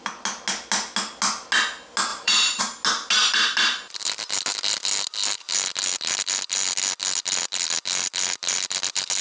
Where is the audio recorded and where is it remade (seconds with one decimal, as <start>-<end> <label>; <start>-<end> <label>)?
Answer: 0.0-2.1 recorded; 2.1-2.6 remade; 2.6-9.2 recorded